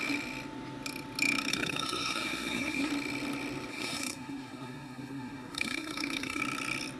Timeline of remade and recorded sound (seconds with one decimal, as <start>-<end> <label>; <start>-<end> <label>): 0.0-1.5 recorded; 1.5-2.9 remade; 2.9-3.7 recorded; 3.7-6.4 remade; 6.4-7.0 recorded